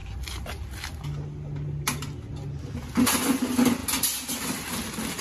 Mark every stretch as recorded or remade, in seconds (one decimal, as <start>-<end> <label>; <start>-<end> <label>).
0.0-5.2 recorded